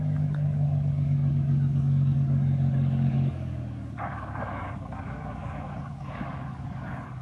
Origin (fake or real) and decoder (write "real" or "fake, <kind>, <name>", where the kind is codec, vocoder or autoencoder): fake, codec, DAC